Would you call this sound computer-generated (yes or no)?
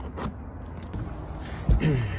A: no